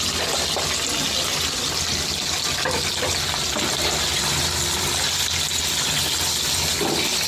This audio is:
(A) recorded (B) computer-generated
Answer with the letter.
A